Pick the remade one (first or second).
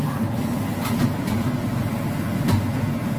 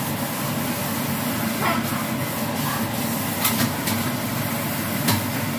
first